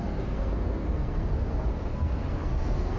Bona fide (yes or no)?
no